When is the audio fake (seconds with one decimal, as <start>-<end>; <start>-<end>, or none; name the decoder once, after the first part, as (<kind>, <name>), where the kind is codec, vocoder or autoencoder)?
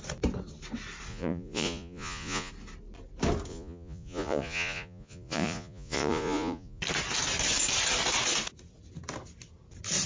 1.1-2.5 (vocoder, Vocos); 3.5-6.8